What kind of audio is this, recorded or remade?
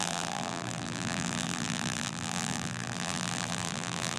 remade